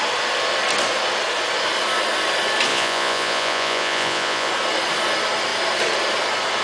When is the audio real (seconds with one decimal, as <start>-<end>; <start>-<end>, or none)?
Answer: 0.0-2.7; 4.5-6.6